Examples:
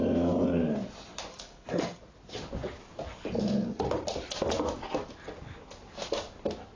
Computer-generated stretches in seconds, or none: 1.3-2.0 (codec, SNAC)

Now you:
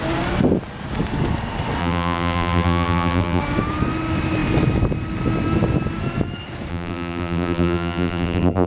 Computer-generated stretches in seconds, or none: 1.8-3.4 (vocoder, BigVGAN v2); 6.7-8.7